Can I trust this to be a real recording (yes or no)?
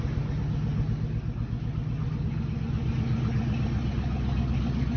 yes